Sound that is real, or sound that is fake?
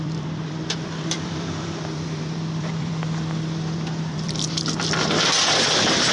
fake